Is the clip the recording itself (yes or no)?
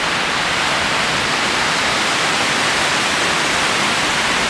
no